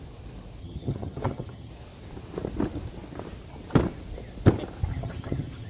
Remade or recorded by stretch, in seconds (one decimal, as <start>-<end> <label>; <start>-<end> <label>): 0.0-0.6 recorded; 0.6-1.7 remade; 1.7-4.9 recorded; 4.9-5.7 remade